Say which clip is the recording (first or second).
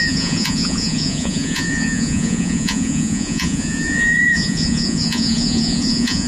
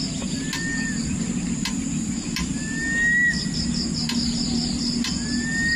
second